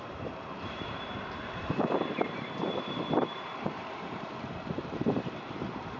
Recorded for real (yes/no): no